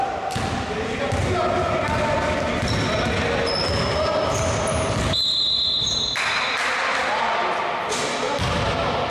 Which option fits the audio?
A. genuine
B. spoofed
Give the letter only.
A